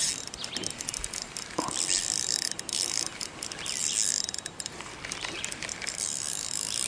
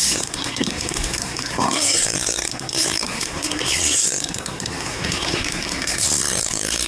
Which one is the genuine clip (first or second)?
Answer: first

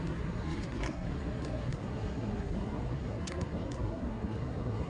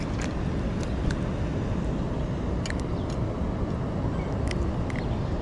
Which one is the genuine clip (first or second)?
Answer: second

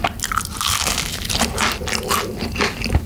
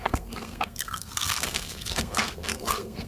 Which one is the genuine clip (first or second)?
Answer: first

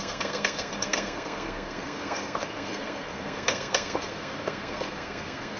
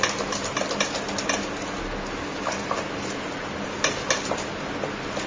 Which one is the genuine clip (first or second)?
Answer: second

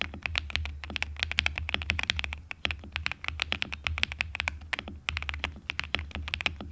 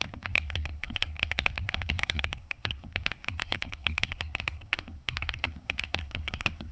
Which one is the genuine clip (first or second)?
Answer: first